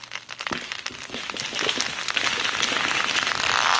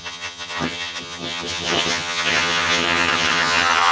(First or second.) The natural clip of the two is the first